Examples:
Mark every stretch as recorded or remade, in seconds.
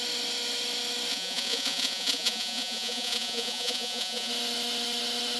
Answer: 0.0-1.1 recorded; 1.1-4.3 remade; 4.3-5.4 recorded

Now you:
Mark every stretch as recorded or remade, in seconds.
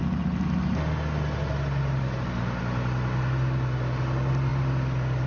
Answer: 0.0-5.3 recorded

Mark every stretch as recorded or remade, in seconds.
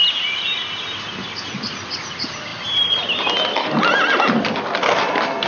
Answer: 0.0-5.5 recorded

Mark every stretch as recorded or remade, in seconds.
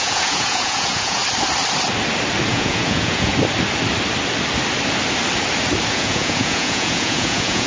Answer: 0.0-1.2 remade; 1.2-2.5 recorded; 2.5-3.3 remade; 3.3-5.9 recorded; 5.9-7.7 remade